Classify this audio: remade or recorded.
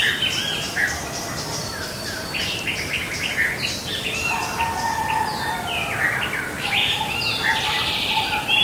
recorded